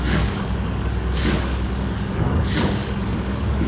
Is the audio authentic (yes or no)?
no